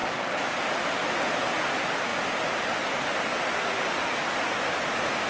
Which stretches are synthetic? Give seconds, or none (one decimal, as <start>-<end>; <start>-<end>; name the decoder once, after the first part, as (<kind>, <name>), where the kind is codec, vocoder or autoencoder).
none

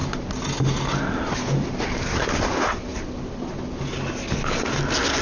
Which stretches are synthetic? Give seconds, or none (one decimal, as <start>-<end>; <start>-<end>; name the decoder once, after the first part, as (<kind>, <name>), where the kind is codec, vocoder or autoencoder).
none

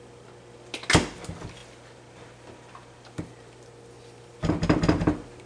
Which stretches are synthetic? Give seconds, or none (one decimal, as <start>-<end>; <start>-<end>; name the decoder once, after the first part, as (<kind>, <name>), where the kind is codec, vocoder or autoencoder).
none

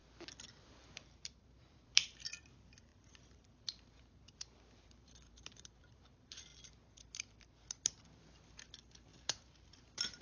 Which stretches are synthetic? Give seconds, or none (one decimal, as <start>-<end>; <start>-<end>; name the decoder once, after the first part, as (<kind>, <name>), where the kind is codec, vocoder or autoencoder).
0.7-6.5 (vocoder, BigVGAN v2); 8.6-10.2

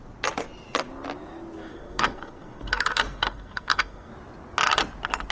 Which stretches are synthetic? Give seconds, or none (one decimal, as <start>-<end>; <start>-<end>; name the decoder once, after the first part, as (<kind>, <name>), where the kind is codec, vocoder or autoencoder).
1.7-4.1 (codec, SNAC)

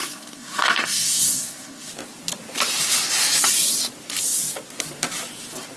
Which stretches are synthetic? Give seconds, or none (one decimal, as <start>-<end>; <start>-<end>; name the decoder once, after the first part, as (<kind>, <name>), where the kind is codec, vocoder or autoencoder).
0.0-1.9 (codec, SNAC)

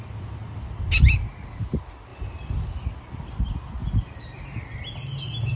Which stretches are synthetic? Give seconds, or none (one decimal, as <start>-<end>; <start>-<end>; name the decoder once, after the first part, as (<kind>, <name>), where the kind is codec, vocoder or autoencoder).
none

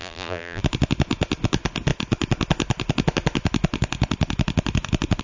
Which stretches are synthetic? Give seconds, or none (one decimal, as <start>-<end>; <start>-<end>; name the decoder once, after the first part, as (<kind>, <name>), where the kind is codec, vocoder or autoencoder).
0.0-0.6 (vocoder, BigVGAN v2)